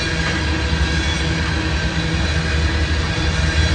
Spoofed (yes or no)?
no